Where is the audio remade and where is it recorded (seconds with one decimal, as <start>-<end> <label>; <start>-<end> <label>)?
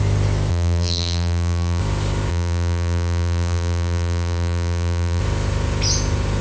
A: 0.0-0.5 recorded; 0.5-1.8 remade; 1.8-2.3 recorded; 2.3-5.2 remade; 5.2-6.4 recorded